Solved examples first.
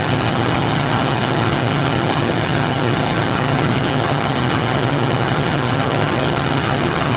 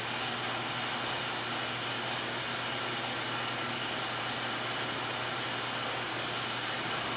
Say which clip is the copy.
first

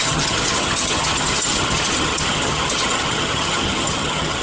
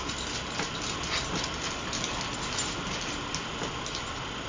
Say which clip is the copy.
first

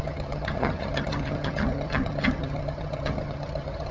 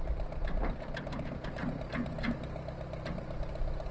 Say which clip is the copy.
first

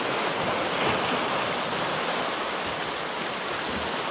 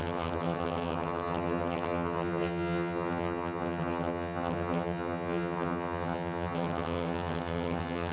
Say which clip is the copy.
second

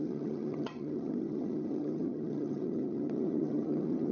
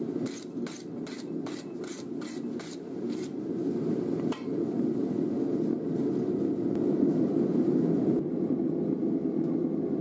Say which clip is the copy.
first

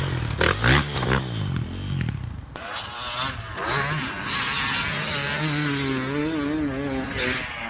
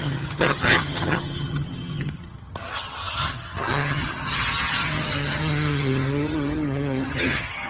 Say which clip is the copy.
second